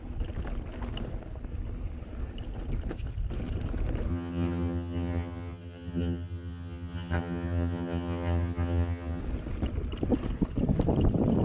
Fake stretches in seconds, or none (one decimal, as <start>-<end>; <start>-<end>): 4.1-9.2